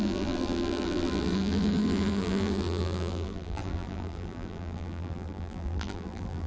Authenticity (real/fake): fake